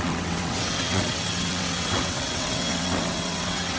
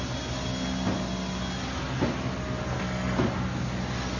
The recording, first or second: second